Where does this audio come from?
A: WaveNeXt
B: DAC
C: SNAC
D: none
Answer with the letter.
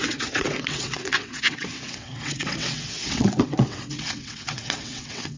A